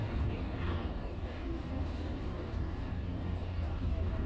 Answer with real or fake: fake